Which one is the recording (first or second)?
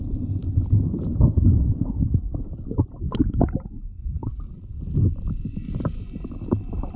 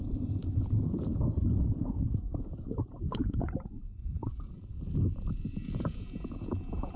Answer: first